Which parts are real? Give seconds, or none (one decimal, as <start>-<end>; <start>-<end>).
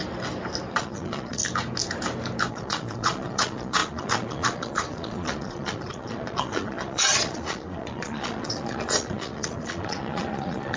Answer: 0.0-0.7; 1.4-2.5